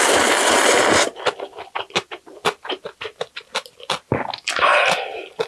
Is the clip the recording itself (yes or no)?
no